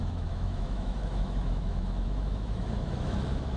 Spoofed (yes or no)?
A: yes